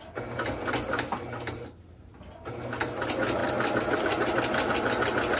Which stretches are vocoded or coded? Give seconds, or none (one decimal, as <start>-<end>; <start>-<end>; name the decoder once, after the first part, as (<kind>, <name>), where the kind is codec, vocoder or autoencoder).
none